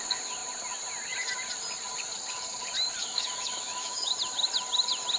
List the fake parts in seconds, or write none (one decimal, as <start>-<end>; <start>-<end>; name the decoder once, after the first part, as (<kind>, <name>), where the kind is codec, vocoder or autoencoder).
3.0-4.1 (autoencoder, DAC-VAE)